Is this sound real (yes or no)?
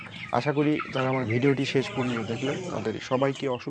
no